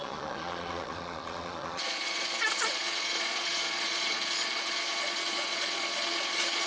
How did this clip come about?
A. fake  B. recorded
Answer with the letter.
A